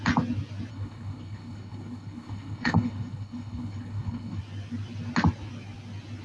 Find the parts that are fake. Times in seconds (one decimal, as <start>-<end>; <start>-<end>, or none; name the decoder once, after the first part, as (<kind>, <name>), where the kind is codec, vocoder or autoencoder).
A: 0.7-4.4 (codec, HILCodec)